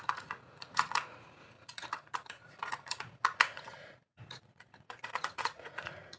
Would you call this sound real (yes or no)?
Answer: no